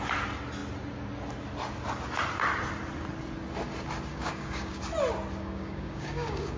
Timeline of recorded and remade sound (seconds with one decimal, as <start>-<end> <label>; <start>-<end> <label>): 0.0-4.1 recorded; 4.1-4.8 remade; 4.8-5.4 recorded; 5.4-6.6 remade